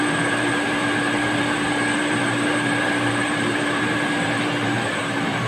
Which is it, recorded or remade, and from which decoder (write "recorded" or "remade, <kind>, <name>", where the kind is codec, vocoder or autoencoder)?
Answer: remade, vocoder, BigVGAN v2